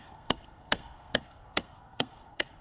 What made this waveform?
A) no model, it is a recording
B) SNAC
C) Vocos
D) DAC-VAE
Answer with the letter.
B